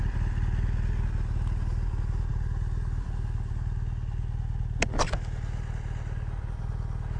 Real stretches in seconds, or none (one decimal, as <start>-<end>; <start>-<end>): 0.0-7.2